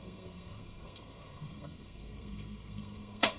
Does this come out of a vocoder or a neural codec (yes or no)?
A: yes